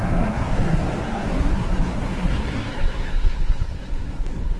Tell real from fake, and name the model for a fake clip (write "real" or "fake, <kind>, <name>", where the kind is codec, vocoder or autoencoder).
fake, codec, SNAC